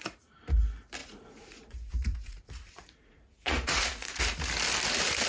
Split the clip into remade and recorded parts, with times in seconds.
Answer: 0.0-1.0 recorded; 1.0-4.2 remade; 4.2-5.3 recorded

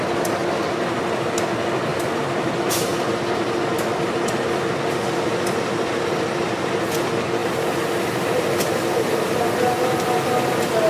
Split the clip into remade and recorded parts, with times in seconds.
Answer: 0.0-10.9 recorded

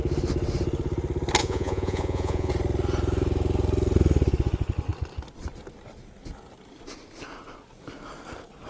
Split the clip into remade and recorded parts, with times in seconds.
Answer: 0.0-1.4 recorded; 1.4-2.5 remade; 2.5-8.7 recorded

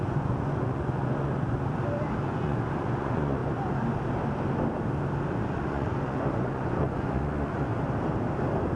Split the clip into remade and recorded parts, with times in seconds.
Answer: 0.0-1.3 remade; 1.3-2.2 recorded; 2.2-3.4 remade; 3.4-5.3 recorded; 5.3-7.7 remade; 7.7-8.8 recorded